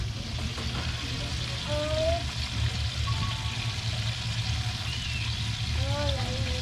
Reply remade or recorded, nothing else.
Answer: recorded